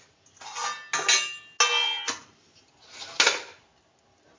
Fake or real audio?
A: real